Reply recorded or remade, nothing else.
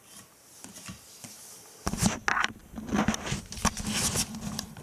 recorded